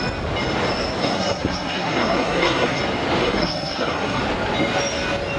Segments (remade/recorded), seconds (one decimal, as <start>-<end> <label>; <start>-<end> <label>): 0.0-1.0 recorded; 1.0-2.8 remade; 2.8-3.2 recorded; 3.2-4.2 remade; 4.2-5.4 recorded